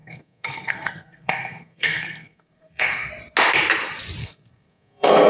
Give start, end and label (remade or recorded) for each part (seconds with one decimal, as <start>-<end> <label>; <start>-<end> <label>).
0.0-3.1 remade; 3.1-4.2 recorded; 4.2-5.3 remade